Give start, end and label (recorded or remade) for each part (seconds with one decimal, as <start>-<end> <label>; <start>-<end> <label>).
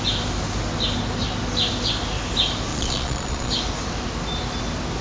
0.0-2.7 recorded; 2.7-3.5 remade; 3.5-5.0 recorded